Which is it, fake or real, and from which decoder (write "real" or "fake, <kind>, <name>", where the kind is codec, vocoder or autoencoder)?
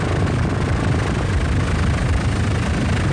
real